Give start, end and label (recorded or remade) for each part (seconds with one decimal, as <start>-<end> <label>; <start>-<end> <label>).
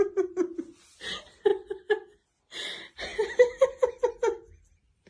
0.0-5.1 recorded